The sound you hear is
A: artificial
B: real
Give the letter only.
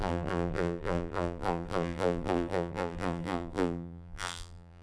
A